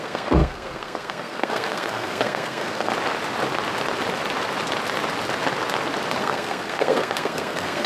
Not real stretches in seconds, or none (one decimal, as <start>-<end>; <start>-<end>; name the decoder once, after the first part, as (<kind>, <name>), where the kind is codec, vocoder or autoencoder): 0.0-2.9 (codec, SNAC); 6.2-7.9